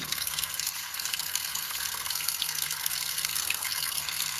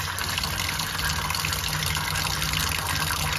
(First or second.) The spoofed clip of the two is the first